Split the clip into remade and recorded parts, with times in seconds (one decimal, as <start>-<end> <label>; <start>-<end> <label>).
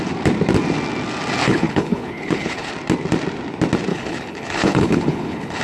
0.0-1.4 recorded; 1.4-2.7 remade; 2.7-3.9 recorded; 3.9-5.6 remade